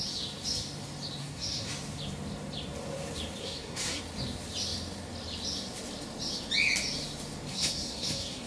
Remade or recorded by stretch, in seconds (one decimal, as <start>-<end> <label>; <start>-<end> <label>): 0.0-1.2 recorded; 1.2-1.7 remade; 1.7-3.4 recorded; 3.4-4.0 remade; 4.0-7.5 recorded; 7.5-8.5 remade